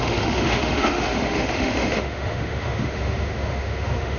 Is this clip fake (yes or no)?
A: yes